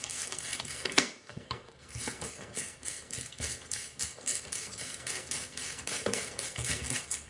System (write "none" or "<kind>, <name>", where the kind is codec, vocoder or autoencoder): codec, SNAC